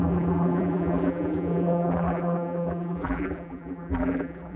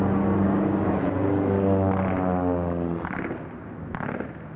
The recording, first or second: second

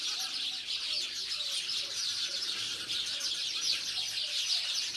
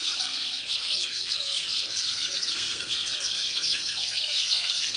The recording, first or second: first